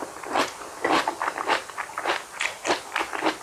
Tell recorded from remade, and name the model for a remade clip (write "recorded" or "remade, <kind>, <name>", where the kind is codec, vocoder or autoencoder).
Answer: recorded